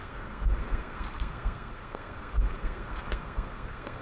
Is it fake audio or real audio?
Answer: fake